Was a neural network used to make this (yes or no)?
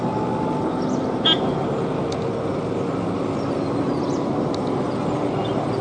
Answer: no